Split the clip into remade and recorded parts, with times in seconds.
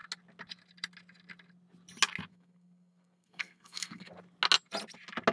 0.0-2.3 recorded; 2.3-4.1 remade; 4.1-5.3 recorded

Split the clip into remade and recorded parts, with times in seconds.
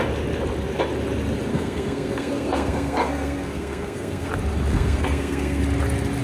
0.0-1.5 recorded; 1.5-4.3 remade; 4.3-4.7 recorded; 4.7-5.6 remade; 5.6-6.2 recorded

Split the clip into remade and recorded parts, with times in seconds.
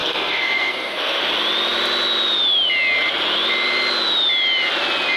0.0-1.2 remade; 1.2-5.2 recorded